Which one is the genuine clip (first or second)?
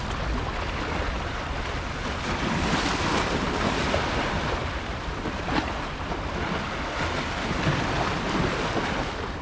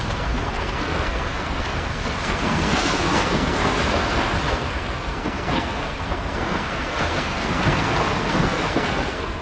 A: first